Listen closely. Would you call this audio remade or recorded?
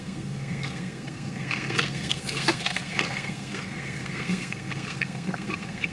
remade